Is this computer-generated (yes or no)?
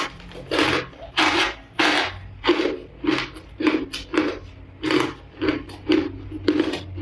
no